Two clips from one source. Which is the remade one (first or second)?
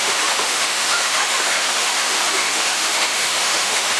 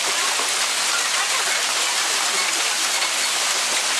first